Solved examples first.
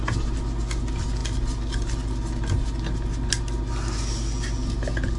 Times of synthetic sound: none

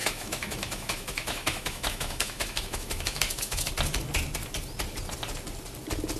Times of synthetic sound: 0.0-3.7 (autoencoder, DAC-VAE)

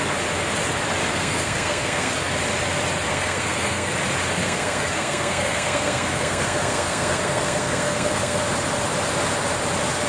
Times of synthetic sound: 1.1-2.1 (codec, SNAC); 3.1-3.9; 4.4-8.4

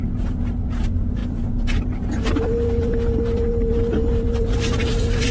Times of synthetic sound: 0.0-5.3 (vocoder, BigVGAN v2)

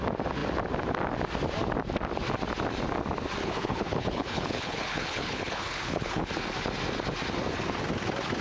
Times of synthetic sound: 3.4-6.3 (codec, HILCodec)

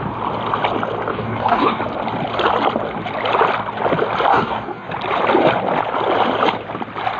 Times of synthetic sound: 1.1-1.8 (codec, DAC); 4.3-4.9

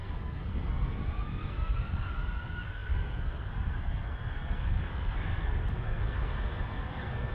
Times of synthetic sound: 0.0-7.3 (codec, SNAC)

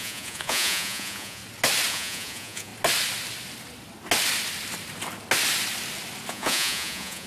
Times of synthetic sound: 0.0-1.4 (vocoder, Vocos); 1.9-2.7; 6.3-7.3